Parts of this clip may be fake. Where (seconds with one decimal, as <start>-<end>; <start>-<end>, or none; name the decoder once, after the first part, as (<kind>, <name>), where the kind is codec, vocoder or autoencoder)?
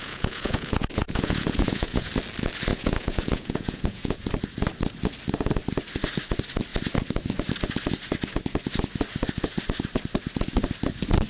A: 0.0-2.1 (vocoder, Vocos); 2.7-4.3